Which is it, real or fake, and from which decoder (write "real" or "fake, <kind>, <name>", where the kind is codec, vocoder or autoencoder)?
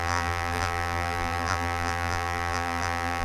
fake, vocoder, BigVGAN v2